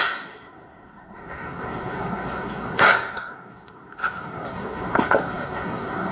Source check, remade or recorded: remade